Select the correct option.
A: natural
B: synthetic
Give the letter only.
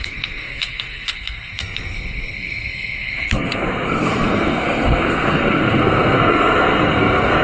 B